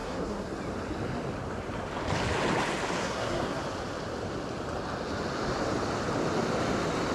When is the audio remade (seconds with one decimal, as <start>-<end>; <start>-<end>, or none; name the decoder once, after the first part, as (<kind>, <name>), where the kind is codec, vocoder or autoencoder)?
0.0-0.5 (codec, SNAC); 3.0-3.6